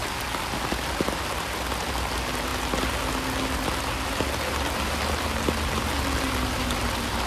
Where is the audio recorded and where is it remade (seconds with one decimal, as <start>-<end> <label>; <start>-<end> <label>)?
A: 0.0-7.3 recorded